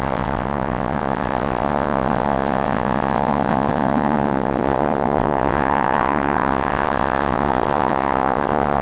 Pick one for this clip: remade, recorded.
remade